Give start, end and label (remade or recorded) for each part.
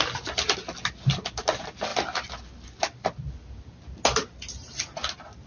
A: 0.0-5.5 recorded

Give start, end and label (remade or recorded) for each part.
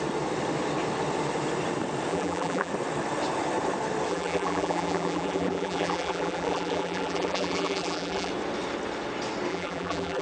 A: 0.0-2.1 recorded; 2.1-2.7 remade; 2.7-4.1 recorded; 4.1-8.3 remade; 8.3-9.5 recorded; 9.5-10.2 remade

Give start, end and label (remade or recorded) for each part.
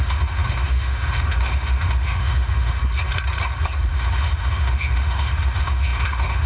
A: 0.0-2.8 remade; 2.8-3.9 recorded; 3.9-6.5 remade